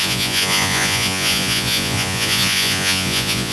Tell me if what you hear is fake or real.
fake